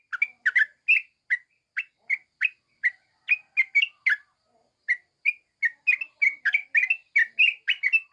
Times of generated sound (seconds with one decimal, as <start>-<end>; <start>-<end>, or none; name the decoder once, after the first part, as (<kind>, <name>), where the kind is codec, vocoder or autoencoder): none

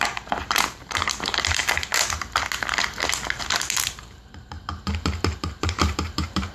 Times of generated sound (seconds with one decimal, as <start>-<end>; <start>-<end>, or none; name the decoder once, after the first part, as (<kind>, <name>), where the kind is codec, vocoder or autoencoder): 0.0-1.9 (vocoder, BigVGAN v2); 3.6-6.5

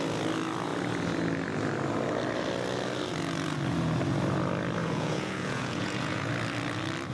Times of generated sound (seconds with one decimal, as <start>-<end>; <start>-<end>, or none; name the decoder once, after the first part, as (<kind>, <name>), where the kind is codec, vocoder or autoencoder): 4.8-6.3 (vocoder, Vocos)

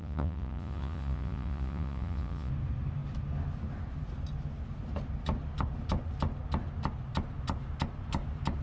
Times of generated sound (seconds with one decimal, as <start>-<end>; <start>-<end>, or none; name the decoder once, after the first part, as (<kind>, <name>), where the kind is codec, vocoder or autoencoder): 0.0-2.5 (vocoder, Vocos)

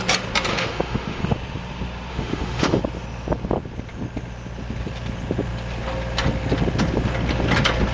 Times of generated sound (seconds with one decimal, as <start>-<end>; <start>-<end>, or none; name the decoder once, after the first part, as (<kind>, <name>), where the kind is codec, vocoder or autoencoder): 0.5-1.2 (autoencoder, DAC-VAE); 2.1-2.8

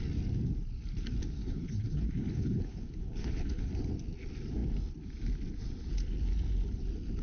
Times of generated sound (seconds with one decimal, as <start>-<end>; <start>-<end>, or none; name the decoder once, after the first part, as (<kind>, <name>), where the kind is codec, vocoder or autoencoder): 1.4-3.7 (codec, HILCodec)